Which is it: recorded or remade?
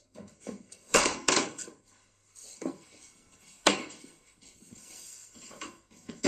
remade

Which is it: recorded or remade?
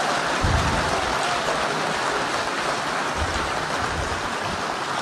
recorded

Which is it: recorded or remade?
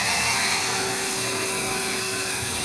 remade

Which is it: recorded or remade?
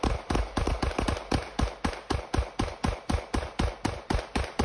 recorded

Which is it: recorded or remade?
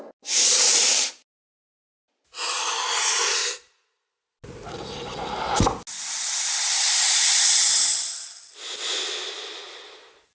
recorded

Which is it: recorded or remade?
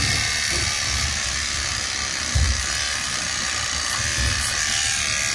recorded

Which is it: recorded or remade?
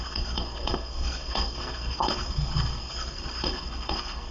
remade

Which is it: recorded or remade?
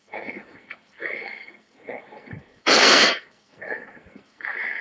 remade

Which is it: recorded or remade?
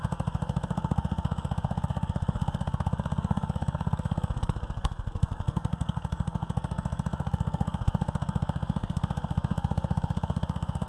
remade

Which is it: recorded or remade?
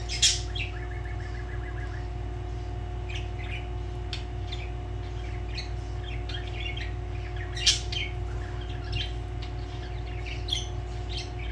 recorded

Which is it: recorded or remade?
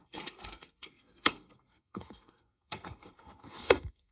remade